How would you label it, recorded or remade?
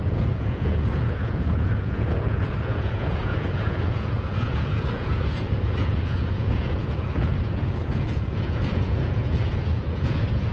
remade